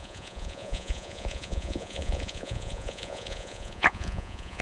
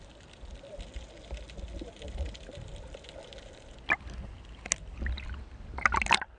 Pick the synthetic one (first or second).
first